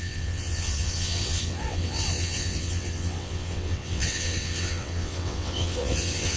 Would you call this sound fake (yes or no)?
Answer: yes